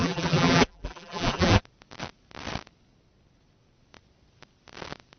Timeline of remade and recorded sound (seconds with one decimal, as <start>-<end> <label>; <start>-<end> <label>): 0.0-1.6 remade; 1.6-5.2 recorded

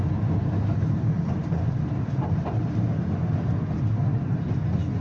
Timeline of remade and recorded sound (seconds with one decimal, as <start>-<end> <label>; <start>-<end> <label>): 0.0-1.4 recorded; 1.4-3.2 remade; 3.2-5.0 recorded

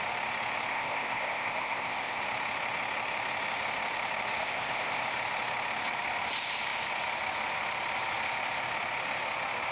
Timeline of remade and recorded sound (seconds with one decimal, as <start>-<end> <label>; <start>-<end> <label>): 0.0-0.7 recorded; 0.7-2.2 remade; 2.2-4.4 recorded; 4.4-5.0 remade; 5.0-9.7 recorded

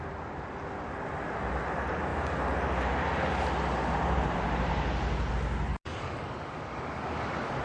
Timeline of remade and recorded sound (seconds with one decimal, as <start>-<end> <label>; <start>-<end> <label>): 0.0-5.7 recorded; 5.7-7.6 remade